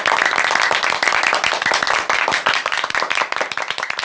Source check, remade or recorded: recorded